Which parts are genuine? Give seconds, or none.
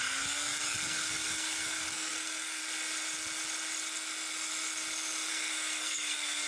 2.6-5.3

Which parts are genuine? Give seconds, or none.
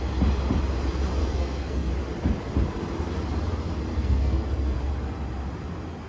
0.0-1.2; 1.9-3.9; 4.9-6.1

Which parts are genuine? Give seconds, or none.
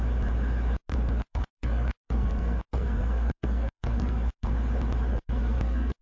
0.0-0.9; 4.5-5.1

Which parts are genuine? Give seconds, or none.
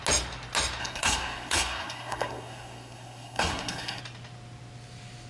0.0-0.8; 4.0-5.3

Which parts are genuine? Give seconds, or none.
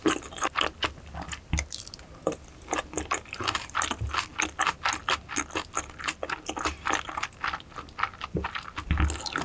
0.0-9.4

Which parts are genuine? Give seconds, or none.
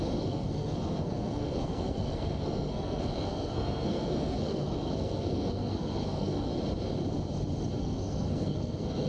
6.5-7.8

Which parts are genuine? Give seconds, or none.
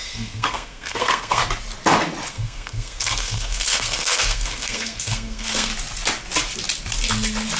1.4-2.3; 5.7-7.6